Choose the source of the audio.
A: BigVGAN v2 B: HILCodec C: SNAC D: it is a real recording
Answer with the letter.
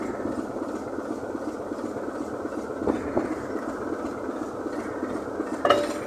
D